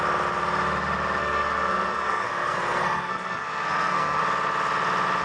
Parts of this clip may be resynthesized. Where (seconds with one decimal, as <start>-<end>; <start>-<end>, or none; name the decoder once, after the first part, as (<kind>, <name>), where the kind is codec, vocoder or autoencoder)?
1.2-4.2 (codec, SNAC)